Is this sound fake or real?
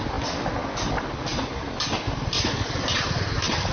real